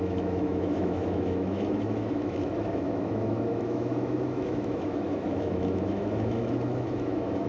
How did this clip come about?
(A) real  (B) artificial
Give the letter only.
B